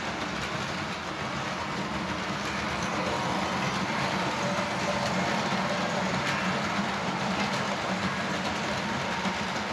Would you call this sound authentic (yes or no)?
yes